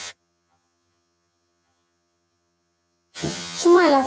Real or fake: fake